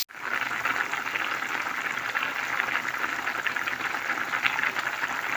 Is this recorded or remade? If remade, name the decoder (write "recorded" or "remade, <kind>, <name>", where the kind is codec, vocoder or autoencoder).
recorded